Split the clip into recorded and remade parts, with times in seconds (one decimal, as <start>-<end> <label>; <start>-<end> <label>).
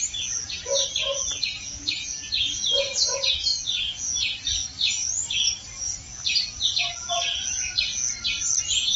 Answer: 0.0-9.0 recorded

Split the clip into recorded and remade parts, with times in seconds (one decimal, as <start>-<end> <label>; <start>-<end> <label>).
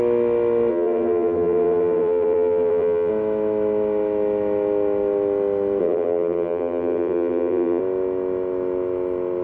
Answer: 0.0-0.7 recorded; 0.7-3.1 remade; 3.1-5.8 recorded; 5.8-7.8 remade; 7.8-9.4 recorded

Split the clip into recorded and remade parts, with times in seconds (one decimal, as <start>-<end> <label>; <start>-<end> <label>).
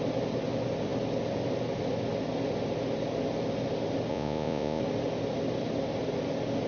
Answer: 0.0-4.1 recorded; 4.1-4.8 remade; 4.8-6.7 recorded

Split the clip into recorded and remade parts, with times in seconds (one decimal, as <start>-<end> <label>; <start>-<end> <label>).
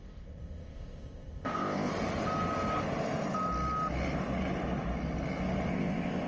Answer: 0.0-1.9 remade; 1.9-5.7 recorded; 5.7-6.3 remade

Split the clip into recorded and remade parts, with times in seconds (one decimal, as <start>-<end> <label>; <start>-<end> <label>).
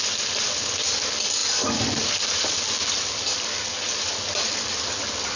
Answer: 0.0-5.4 recorded